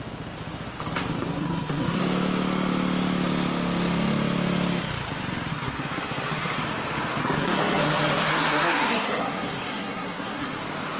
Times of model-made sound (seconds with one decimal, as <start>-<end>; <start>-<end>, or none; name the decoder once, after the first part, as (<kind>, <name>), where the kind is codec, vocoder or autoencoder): 1.1-2.0 (codec, SNAC); 5.5-6.6; 7.2-10.6

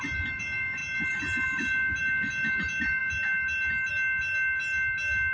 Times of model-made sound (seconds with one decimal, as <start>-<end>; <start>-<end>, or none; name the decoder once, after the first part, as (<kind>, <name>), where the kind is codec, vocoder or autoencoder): none

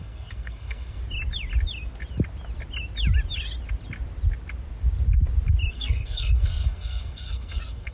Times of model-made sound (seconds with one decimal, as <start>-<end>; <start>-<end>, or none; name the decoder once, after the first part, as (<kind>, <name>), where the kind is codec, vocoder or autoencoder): 0.0-1.0 (codec, SNAC); 5.7-7.9